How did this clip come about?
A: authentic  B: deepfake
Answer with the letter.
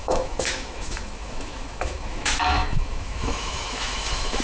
B